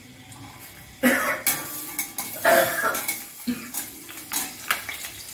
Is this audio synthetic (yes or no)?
no